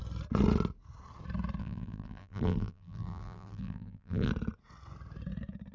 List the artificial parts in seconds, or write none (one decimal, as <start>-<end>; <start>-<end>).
1.6-4.3